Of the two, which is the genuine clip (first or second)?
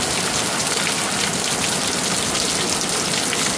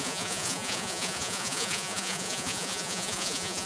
first